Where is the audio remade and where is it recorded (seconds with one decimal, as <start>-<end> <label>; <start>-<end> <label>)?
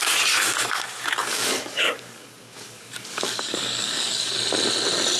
0.0-1.2 recorded; 1.2-4.3 remade; 4.3-5.2 recorded